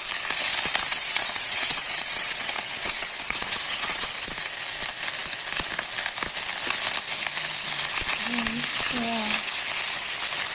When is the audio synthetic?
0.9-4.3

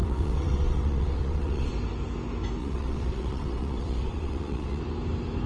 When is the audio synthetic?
0.0-1.7; 2.6-4.8

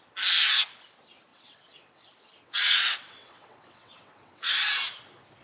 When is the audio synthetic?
1.3-4.5

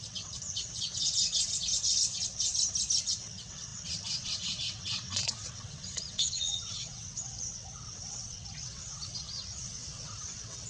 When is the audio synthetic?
0.0-2.5; 3.0-10.7

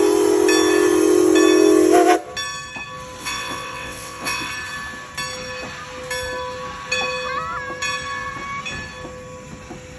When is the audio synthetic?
3.2-4.5